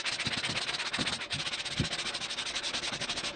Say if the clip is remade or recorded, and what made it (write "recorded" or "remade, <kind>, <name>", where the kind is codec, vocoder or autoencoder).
recorded